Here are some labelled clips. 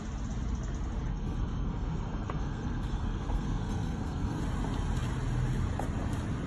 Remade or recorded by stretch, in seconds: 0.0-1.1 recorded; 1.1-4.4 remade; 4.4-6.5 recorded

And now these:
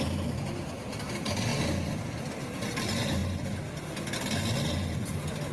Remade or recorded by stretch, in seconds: 0.0-5.5 recorded